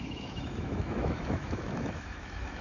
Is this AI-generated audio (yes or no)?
yes